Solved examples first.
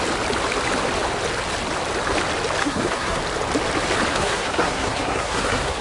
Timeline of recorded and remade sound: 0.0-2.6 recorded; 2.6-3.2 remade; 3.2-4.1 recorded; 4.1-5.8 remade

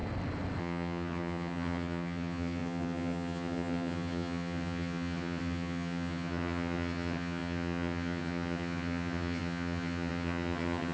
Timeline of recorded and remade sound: 0.0-0.6 recorded; 0.6-10.9 remade

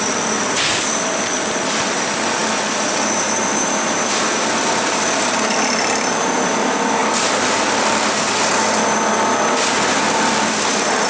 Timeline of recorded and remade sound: 0.0-11.1 recorded

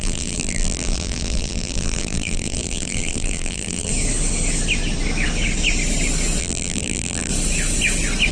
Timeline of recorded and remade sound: 0.0-3.9 remade; 3.9-6.4 recorded; 6.4-7.3 remade; 7.3-8.3 recorded

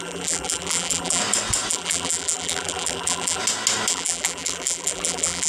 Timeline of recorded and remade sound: 0.0-1.2 remade; 1.2-1.7 recorded; 1.7-3.4 remade; 3.4-3.9 recorded; 3.9-5.5 remade

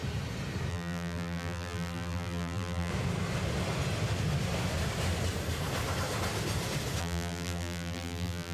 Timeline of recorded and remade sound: 0.0-0.7 recorded; 0.7-2.9 remade; 2.9-7.0 recorded; 7.0-8.5 remade

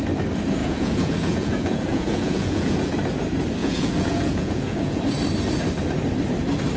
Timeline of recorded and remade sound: 0.0-0.6 recorded; 0.6-2.9 remade; 2.9-3.6 recorded; 3.6-5.0 remade; 5.0-6.8 recorded

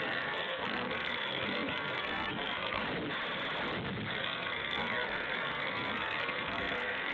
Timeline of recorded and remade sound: 0.0-2.8 remade; 2.8-4.1 recorded; 4.1-7.1 remade